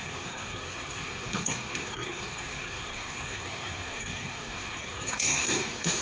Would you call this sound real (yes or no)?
no